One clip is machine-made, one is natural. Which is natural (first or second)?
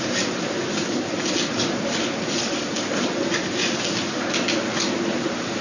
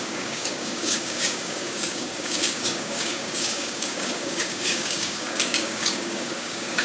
first